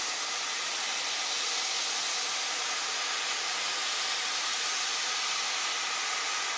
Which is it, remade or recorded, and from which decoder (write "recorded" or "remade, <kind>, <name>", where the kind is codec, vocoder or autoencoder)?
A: recorded